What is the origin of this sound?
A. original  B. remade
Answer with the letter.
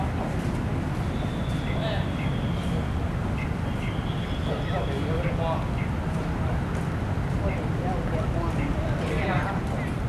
A